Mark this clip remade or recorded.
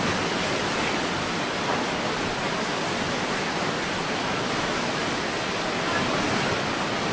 remade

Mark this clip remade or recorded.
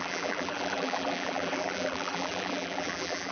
remade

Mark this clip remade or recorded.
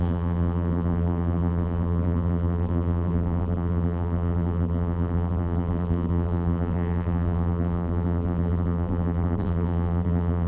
remade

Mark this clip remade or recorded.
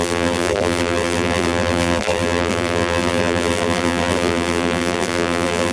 remade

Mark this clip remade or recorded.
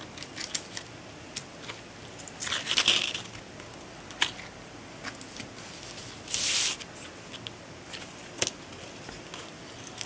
recorded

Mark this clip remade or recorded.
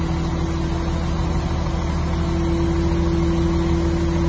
recorded